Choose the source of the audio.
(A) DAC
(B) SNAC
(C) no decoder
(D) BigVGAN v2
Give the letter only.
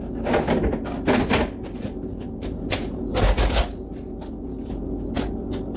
C